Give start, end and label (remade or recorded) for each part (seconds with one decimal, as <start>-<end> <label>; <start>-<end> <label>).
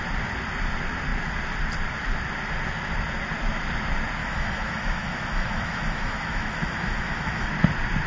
0.0-4.2 recorded; 4.2-7.5 remade; 7.5-8.1 recorded